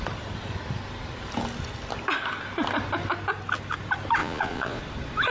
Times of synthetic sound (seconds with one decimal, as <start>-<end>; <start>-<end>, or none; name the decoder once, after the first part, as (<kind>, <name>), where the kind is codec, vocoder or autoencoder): 4.2-4.8 (vocoder, Vocos)